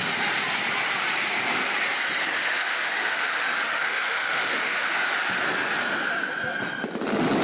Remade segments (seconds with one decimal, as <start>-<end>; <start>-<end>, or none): 2.3-4.9